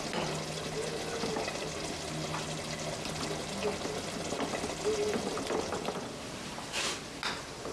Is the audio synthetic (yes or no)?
no